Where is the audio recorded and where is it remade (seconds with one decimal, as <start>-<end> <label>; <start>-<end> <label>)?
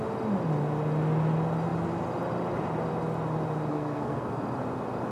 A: 0.0-3.7 recorded; 3.7-4.4 remade; 4.4-5.1 recorded